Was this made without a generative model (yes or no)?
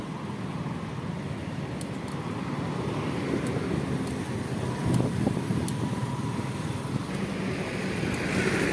yes